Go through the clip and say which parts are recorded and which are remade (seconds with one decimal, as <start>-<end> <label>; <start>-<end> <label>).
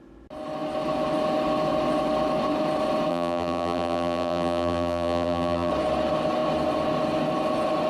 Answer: 0.0-3.1 recorded; 3.1-5.7 remade; 5.7-7.9 recorded